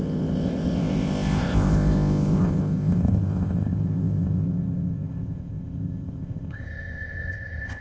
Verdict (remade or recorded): remade